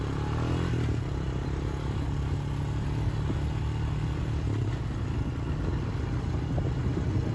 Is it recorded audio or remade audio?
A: recorded